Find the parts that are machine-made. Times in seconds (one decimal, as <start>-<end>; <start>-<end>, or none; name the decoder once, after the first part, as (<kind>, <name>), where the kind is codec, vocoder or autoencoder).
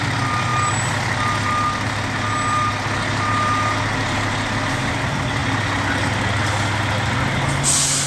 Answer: none